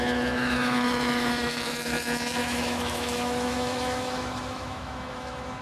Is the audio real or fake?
fake